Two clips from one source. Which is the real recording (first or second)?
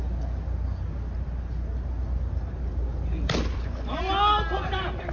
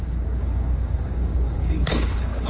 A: first